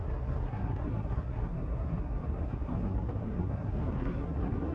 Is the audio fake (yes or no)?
yes